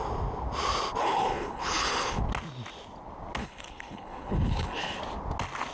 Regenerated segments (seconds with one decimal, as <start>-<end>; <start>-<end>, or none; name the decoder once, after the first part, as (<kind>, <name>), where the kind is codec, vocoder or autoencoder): 1.0-2.2 (codec, HILCodec); 3.4-5.0